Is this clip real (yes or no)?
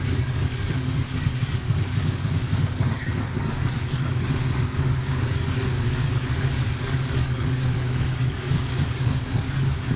no